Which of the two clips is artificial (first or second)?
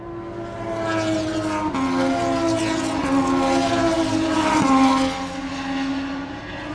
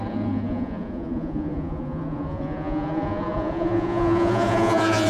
second